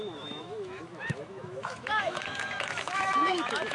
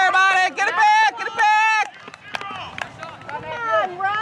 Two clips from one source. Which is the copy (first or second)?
first